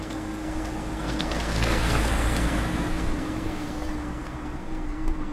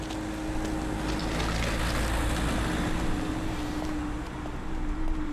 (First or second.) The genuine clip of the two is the second